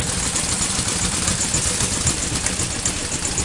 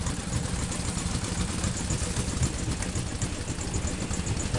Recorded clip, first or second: second